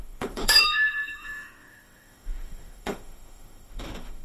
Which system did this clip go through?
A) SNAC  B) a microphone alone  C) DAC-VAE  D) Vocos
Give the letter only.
C